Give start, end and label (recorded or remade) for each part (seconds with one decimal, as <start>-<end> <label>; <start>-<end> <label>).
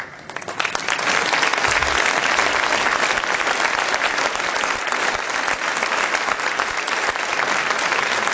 0.0-8.3 recorded